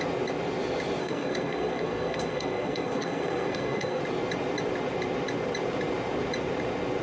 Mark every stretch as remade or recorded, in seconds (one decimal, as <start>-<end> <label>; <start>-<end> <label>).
0.0-1.0 recorded; 1.0-4.0 remade; 4.0-7.0 recorded